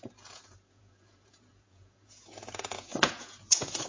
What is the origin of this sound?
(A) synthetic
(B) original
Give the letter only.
A